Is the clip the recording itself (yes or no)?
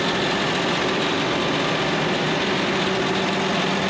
yes